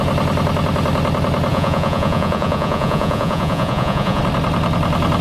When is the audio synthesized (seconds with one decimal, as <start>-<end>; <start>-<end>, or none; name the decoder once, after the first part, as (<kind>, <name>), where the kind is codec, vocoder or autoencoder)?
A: 1.5-4.2 (vocoder, Vocos)